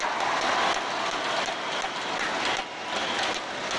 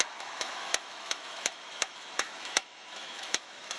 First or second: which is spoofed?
second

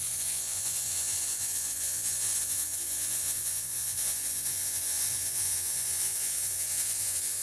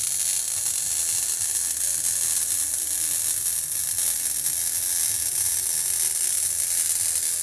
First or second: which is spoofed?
first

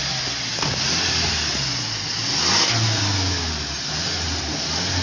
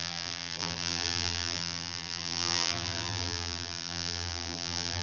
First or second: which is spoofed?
second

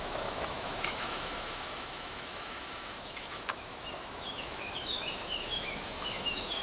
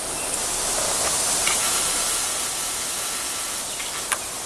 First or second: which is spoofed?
first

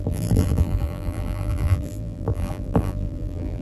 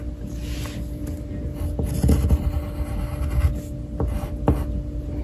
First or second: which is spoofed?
first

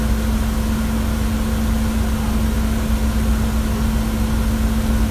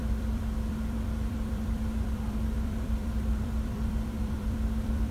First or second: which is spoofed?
second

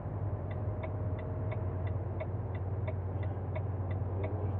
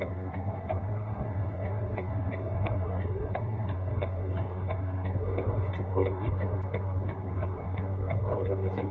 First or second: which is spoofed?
second